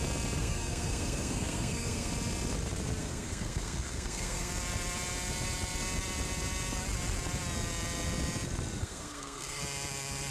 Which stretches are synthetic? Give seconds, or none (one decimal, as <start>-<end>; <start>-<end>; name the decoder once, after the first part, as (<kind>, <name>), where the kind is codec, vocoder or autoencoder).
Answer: 0.4-2.1 (codec, SNAC); 3.0-4.5; 8.8-9.6